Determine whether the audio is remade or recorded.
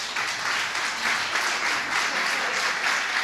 recorded